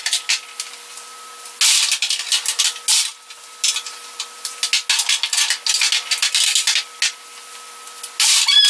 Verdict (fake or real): real